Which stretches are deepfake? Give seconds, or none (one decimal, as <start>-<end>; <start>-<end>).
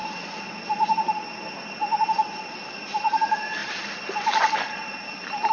none